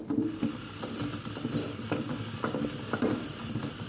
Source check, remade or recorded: recorded